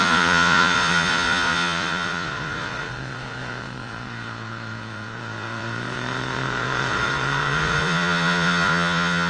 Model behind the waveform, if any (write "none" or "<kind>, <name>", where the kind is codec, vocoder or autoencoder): vocoder, Vocos